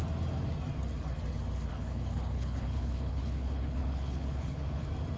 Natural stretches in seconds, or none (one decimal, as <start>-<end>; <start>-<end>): 0.0-1.7; 4.8-5.2